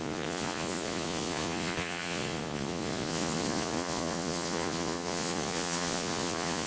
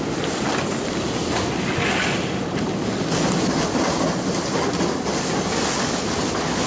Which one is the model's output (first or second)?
first